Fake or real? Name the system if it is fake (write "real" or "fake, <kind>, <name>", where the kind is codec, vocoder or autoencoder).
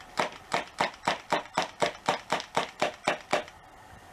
real